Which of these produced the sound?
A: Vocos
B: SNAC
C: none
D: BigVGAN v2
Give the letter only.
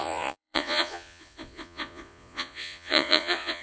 A